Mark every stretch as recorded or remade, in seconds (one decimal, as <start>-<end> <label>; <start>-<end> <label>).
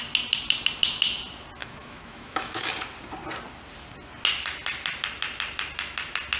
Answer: 0.0-1.6 recorded; 1.6-2.7 remade; 2.7-6.4 recorded